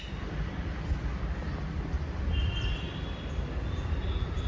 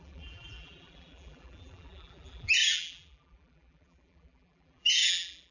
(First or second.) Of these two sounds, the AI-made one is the second